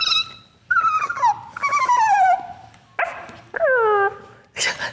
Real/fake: real